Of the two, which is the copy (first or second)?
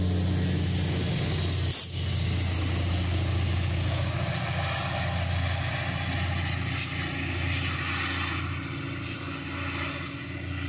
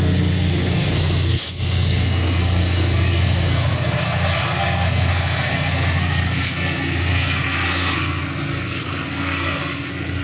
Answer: second